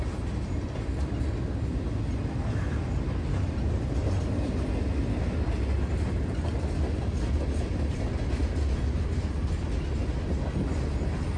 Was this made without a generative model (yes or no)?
yes